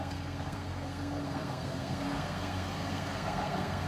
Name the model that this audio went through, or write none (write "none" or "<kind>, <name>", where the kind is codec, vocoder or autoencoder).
codec, SNAC